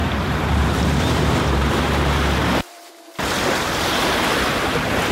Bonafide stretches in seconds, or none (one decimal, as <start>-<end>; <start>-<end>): 3.1-5.1